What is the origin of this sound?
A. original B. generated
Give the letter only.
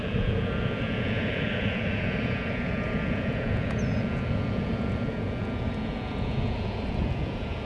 B